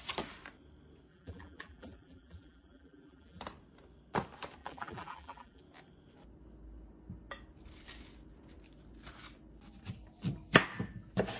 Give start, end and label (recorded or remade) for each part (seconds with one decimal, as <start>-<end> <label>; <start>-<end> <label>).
0.0-1.1 recorded; 1.1-3.4 remade; 3.4-4.6 recorded; 4.6-5.6 remade; 5.6-11.4 recorded